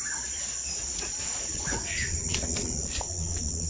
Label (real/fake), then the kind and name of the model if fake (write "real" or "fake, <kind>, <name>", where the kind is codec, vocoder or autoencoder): fake, vocoder, Vocos